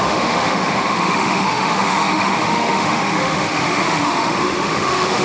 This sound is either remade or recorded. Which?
remade